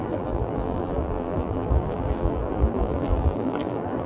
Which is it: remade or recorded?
remade